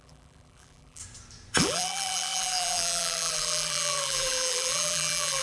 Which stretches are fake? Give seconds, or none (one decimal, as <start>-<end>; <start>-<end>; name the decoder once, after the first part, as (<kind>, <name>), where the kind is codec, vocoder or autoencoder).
0.0-1.0 (vocoder, BigVGAN v2); 1.6-5.4